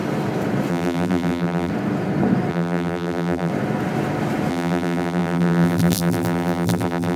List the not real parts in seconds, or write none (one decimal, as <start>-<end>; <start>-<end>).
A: 0.7-1.7; 2.5-3.5; 4.5-7.2